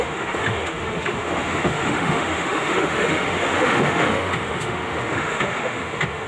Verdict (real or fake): fake